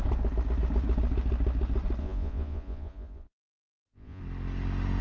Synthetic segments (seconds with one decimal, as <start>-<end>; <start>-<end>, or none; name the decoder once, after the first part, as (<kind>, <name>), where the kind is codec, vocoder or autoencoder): 2.0-4.2 (vocoder, Vocos)